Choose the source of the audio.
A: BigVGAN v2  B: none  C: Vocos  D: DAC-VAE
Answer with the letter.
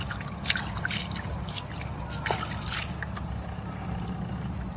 B